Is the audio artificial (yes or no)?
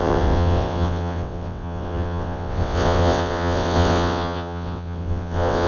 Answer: yes